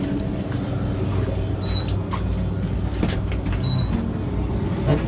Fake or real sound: real